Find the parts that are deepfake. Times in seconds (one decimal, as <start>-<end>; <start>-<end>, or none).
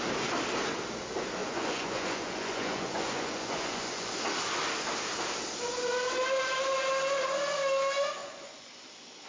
1.4-4.1; 8.2-8.7